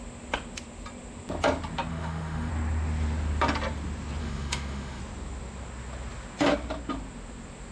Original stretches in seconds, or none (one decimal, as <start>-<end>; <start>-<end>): 0.0-1.9; 2.5-4.2; 5.0-7.7